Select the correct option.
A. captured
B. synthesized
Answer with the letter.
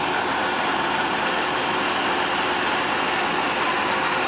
A